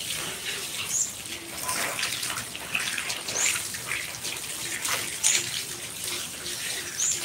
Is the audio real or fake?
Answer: real